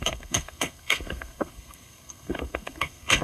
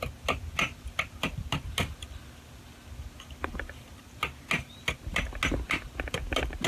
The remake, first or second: first